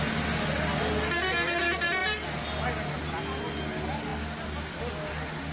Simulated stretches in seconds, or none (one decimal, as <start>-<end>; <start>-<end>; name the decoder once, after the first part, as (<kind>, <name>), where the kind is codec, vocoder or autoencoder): none